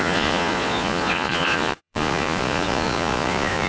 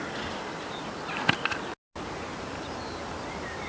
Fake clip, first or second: first